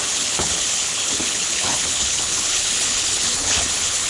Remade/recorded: remade